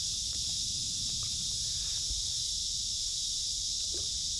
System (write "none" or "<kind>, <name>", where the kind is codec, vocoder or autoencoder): vocoder, BigVGAN v2